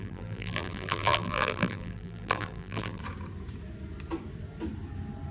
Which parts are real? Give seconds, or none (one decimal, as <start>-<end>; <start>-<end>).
3.0-5.3